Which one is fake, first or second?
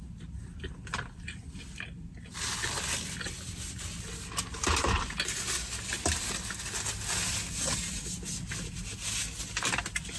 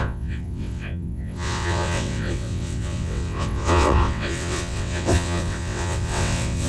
second